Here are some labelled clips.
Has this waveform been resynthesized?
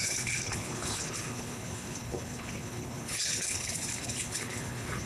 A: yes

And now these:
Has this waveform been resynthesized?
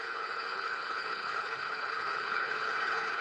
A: yes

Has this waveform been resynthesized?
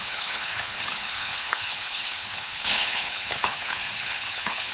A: yes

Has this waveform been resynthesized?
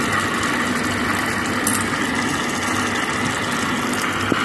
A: no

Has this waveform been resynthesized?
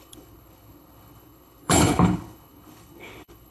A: yes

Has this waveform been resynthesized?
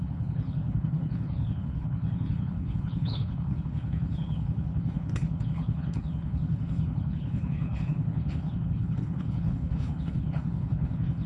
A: yes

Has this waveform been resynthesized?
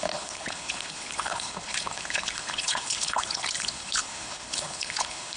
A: yes